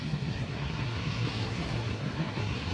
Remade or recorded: remade